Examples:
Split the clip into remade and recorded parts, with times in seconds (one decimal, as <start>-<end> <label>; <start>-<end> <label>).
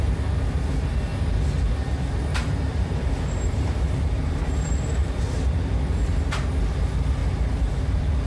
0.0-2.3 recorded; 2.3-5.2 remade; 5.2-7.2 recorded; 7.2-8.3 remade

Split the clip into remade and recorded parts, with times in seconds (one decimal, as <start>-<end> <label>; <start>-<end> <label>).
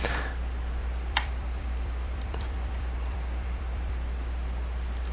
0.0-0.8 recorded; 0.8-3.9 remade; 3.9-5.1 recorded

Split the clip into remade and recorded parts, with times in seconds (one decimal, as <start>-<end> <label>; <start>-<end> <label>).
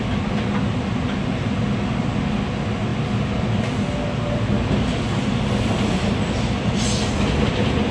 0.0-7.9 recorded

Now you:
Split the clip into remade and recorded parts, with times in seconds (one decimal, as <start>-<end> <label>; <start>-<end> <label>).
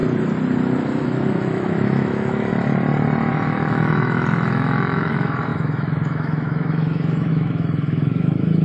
0.0-0.9 recorded; 0.9-2.5 remade; 2.5-3.3 recorded; 3.3-8.6 remade